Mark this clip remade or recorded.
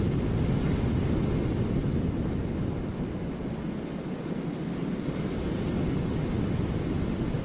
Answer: recorded